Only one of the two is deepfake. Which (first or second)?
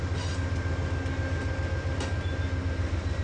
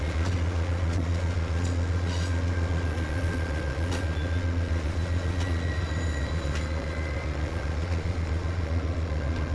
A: second